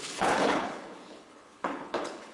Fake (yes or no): yes